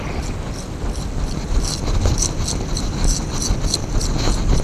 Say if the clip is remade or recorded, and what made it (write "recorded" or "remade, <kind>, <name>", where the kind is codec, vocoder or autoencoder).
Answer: recorded